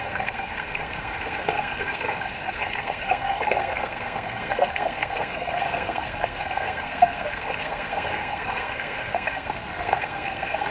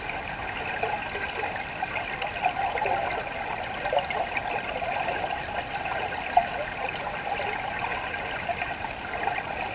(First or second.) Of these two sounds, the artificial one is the first